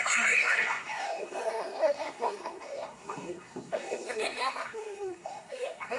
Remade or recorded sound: remade